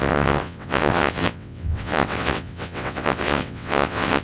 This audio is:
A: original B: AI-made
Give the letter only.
B